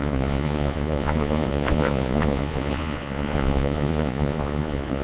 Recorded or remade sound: remade